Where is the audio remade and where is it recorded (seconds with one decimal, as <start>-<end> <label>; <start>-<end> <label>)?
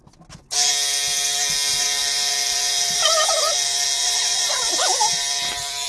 0.0-1.7 recorded; 1.7-5.2 remade; 5.2-5.9 recorded